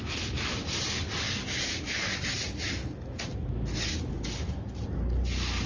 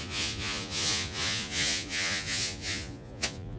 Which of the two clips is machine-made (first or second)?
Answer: second